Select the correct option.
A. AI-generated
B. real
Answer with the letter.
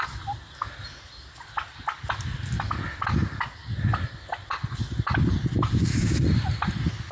B